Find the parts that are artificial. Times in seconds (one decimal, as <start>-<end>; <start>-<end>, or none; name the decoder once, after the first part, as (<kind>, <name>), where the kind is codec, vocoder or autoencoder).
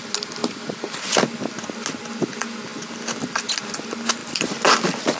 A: none